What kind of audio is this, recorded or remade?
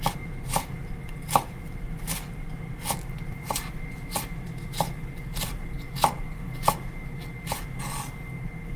recorded